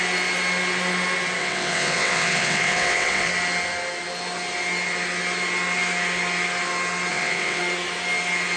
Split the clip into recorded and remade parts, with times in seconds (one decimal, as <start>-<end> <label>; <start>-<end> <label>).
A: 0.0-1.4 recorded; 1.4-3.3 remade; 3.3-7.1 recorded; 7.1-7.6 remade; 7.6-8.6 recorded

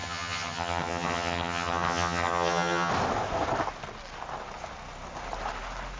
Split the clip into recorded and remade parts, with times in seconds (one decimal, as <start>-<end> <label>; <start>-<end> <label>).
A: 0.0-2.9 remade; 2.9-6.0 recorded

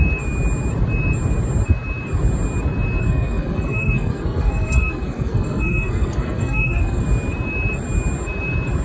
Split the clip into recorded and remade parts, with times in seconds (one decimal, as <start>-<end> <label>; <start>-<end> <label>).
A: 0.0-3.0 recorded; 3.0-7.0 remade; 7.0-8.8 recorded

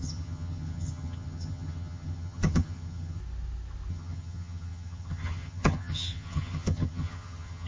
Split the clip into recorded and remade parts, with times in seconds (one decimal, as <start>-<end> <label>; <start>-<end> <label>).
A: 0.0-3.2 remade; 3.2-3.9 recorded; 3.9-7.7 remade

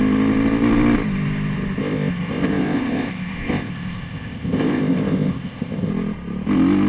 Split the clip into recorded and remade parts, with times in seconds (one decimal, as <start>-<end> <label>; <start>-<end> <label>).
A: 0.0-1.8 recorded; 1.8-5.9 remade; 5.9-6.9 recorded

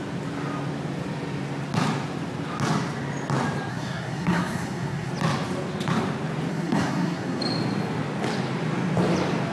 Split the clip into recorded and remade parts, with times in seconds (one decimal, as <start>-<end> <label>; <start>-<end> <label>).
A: 0.0-3.7 recorded; 3.7-5.1 remade; 5.1-6.5 recorded; 6.5-7.4 remade; 7.4-9.5 recorded

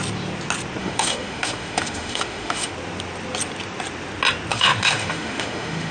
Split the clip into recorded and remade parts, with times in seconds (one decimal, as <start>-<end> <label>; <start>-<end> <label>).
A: 0.0-0.8 recorded; 0.8-2.7 remade; 2.7-4.5 recorded; 4.5-5.9 remade

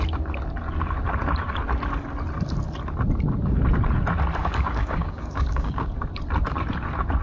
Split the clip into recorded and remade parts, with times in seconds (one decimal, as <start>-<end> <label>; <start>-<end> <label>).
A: 0.0-4.4 recorded; 4.4-5.9 remade; 5.9-7.2 recorded